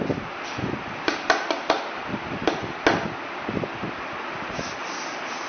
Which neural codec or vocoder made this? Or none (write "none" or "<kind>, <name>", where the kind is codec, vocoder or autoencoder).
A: none